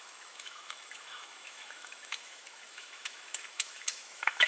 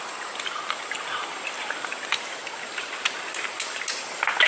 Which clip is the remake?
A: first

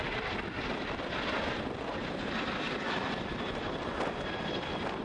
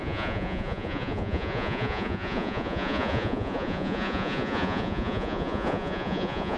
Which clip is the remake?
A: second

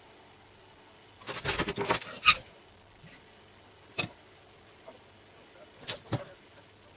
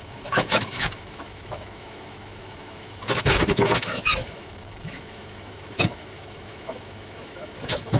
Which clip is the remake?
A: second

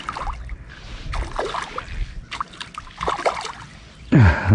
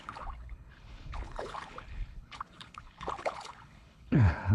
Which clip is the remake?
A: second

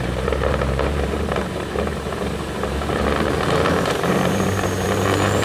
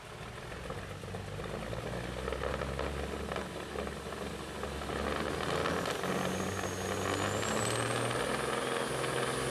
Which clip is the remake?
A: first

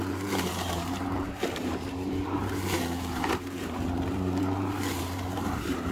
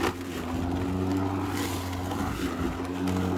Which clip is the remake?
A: first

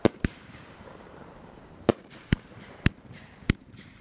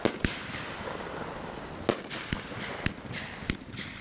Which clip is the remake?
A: first